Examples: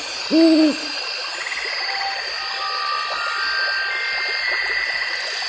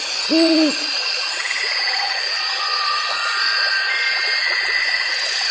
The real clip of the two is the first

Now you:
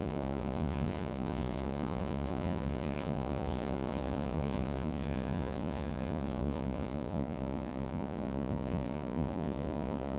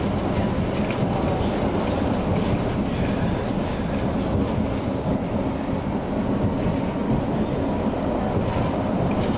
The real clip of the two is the second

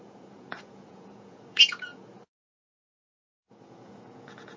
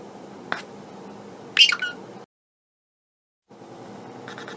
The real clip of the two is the second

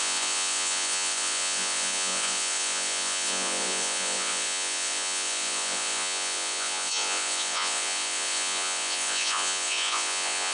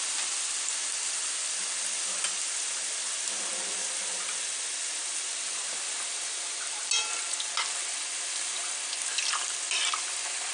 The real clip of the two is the second